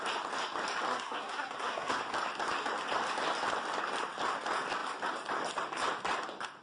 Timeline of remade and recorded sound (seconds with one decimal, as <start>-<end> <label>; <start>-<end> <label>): 0.0-0.9 recorded; 0.9-2.0 remade; 2.0-6.6 recorded